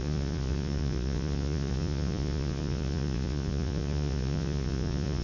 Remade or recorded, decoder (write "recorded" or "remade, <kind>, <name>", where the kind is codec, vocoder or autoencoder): remade, vocoder, Vocos